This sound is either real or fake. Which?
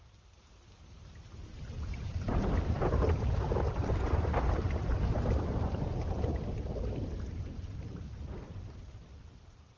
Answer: fake